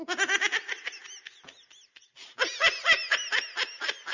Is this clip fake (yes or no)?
no